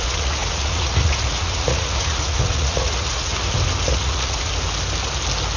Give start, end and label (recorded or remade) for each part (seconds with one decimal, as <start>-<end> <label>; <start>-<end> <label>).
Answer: 0.0-3.3 remade; 3.3-3.9 recorded; 3.9-4.5 remade; 4.5-5.6 recorded